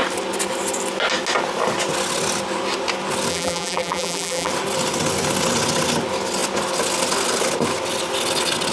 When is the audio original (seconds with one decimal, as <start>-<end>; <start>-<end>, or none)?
0.0-3.3; 4.5-8.7